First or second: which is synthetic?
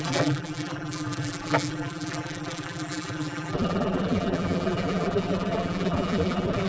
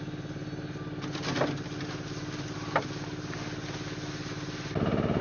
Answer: first